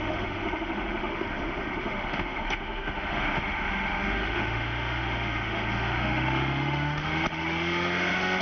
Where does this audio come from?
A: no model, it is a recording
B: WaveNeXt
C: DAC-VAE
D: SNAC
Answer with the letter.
C